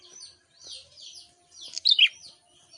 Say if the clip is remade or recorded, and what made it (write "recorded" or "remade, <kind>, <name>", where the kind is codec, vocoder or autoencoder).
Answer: remade, vocoder, BigVGAN v2